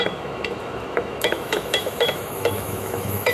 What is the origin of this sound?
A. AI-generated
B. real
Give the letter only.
A